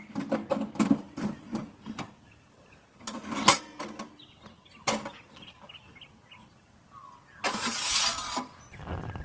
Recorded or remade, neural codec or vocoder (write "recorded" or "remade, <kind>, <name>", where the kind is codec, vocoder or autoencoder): recorded